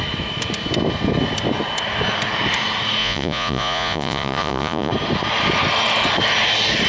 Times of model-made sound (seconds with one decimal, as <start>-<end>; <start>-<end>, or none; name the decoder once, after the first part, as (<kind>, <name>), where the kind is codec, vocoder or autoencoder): 3.0-4.9 (vocoder, Vocos)